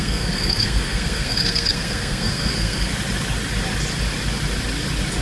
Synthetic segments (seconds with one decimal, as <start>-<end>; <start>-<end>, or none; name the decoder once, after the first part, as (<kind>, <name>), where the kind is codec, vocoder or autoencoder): 0.0-2.9 (codec, SNAC)